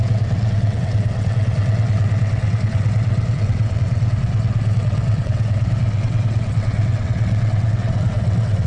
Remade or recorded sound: remade